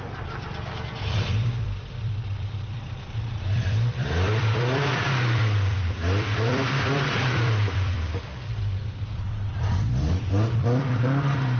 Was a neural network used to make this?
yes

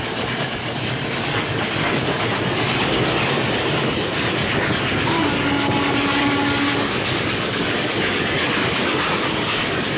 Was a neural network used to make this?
yes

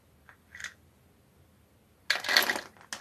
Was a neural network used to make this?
no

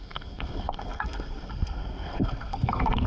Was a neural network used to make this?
yes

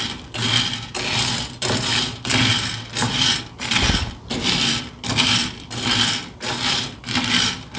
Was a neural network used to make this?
no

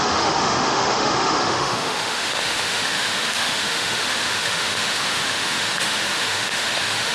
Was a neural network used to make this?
yes